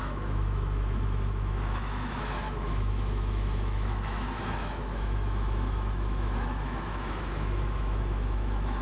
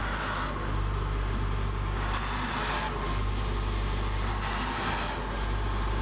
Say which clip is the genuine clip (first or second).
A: second